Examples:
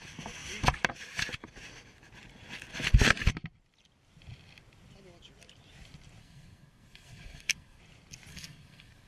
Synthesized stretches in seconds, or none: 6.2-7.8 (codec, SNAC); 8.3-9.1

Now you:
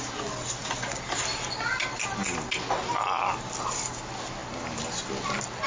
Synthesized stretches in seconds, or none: none

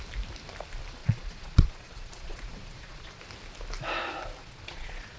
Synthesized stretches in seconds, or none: 1.0-3.2 (vocoder, Vocos); 4.4-5.2

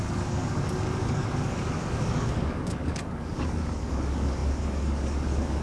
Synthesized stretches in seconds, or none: 0.0-5.6 (codec, DAC)

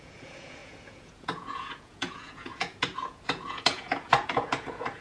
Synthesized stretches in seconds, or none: 0.0-5.0 (vocoder, Vocos)

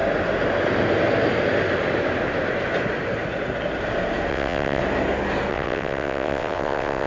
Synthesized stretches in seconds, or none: 4.3-4.8 (vocoder, WaveNeXt); 5.5-7.1

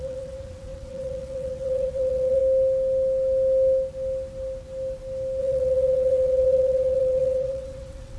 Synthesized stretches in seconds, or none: 0.0-2.4 (vocoder, WaveNeXt); 5.4-8.2